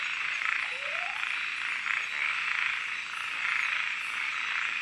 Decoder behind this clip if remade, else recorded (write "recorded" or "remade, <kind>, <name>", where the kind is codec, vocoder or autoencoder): recorded